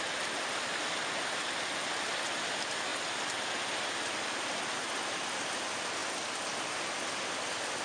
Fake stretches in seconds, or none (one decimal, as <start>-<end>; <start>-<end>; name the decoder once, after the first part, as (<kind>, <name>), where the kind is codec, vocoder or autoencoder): none